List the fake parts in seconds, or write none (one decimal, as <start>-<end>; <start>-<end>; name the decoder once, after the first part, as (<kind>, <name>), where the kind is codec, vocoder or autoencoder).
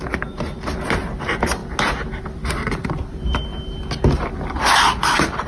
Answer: none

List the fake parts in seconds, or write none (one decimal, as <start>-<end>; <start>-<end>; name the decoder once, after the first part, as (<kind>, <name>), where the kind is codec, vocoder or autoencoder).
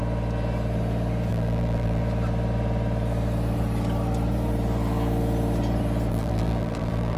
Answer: 1.3-2.0 (vocoder, BigVGAN v2); 6.1-7.2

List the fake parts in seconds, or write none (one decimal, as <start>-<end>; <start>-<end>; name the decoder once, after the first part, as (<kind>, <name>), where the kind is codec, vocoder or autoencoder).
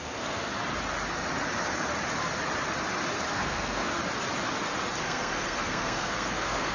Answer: 0.0-0.5 (codec, SNAC); 3.3-3.9; 5.0-6.7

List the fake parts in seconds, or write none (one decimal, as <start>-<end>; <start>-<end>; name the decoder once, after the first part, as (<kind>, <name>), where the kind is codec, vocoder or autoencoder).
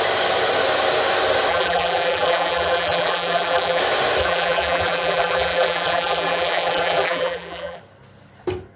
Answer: 1.5-3.8 (vocoder, BigVGAN v2); 4.2-7.8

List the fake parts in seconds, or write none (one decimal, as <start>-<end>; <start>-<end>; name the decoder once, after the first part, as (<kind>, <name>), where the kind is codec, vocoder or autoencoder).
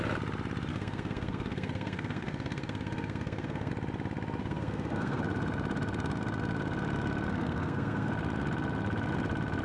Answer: 0.7-3.7 (codec, SNAC); 4.4-5.2; 7.3-8.1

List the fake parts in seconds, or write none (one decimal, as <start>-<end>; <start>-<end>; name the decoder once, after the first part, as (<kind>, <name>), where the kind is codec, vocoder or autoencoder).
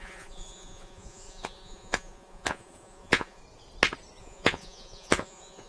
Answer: 0.0-3.4 (vocoder, Vocos); 4.2-5.7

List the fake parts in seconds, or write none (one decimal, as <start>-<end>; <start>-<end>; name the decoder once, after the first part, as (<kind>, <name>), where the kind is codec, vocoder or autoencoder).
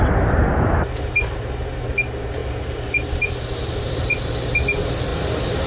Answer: 0.0-5.1 (vocoder, BigVGAN v2)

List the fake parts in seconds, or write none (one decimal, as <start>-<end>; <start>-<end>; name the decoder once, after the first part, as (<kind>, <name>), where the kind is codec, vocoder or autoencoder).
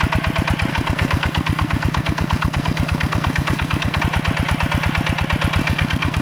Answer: 0.7-4.0 (codec, SNAC); 5.6-6.2